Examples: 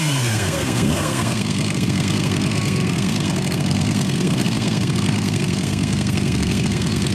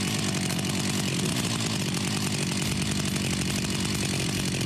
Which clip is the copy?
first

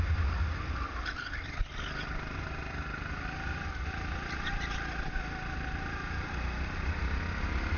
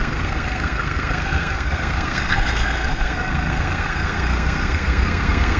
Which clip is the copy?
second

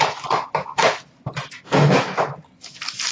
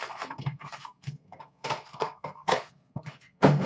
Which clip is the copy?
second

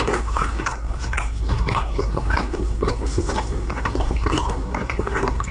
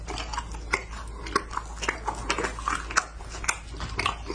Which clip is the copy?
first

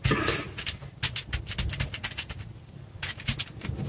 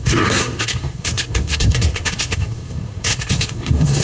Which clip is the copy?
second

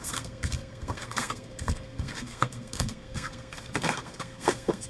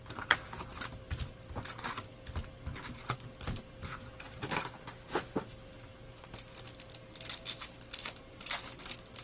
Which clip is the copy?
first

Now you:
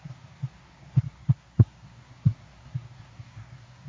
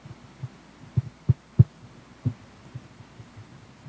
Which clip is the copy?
first